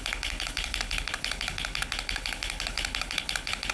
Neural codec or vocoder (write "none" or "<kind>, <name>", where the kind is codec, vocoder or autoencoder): codec, HILCodec